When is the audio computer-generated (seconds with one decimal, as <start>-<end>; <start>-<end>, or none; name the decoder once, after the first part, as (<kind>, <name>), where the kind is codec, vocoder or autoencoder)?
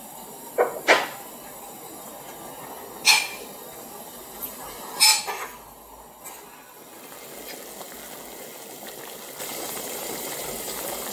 0.0-2.1 (vocoder, BigVGAN v2); 4.2-5.1; 9.4-11.1